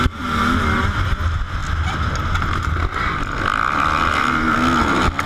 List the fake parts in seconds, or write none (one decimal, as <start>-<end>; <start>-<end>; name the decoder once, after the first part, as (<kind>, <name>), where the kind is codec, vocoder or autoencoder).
none